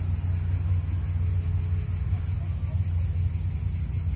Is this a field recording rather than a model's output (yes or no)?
yes